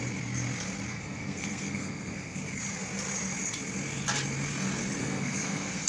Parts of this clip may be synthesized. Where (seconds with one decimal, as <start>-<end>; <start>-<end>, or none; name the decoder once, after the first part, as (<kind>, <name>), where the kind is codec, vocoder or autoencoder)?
0.9-2.4 (codec, SNAC); 5.0-5.9